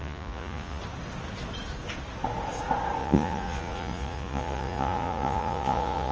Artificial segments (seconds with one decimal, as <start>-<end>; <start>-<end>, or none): 0.0-0.8; 3.0-6.1